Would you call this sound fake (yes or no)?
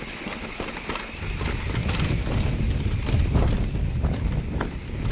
no